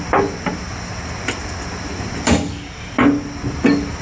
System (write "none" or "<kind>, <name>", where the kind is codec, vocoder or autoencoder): none